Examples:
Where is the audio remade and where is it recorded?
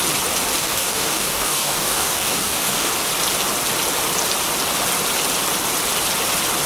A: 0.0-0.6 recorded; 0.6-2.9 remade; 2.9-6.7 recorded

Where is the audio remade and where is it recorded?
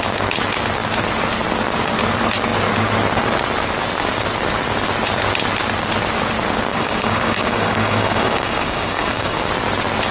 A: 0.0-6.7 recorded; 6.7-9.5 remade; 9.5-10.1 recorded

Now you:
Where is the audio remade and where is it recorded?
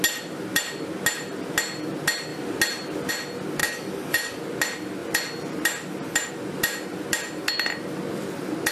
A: 0.0-3.6 recorded; 3.6-4.4 remade; 4.4-8.7 recorded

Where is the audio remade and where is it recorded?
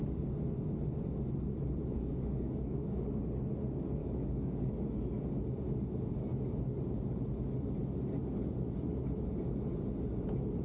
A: 0.0-1.8 recorded; 1.8-3.1 remade; 3.1-4.0 recorded; 4.0-4.7 remade; 4.7-10.6 recorded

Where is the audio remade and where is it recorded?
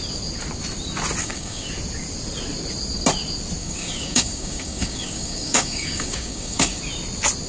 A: 0.0-1.2 recorded; 1.2-1.7 remade; 1.7-3.6 recorded; 3.6-6.8 remade; 6.8-7.5 recorded